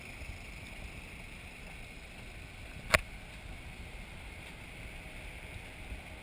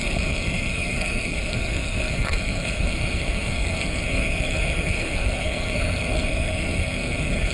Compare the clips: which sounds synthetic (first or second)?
second